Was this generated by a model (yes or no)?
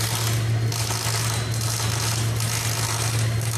no